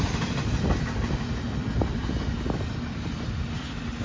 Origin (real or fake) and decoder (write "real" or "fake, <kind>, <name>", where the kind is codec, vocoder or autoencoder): real